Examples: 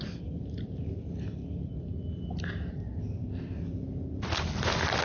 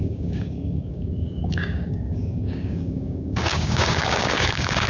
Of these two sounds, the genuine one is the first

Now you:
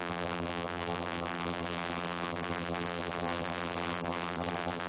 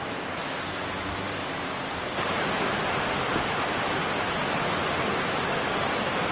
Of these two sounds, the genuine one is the second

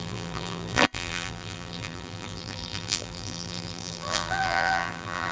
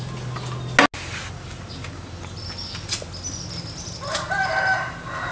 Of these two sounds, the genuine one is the second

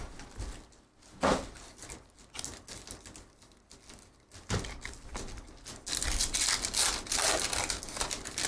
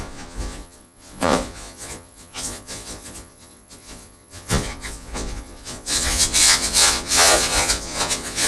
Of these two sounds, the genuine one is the first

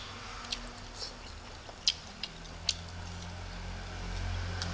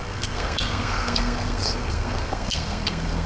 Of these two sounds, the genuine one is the first